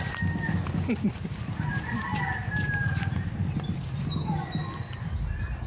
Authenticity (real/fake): real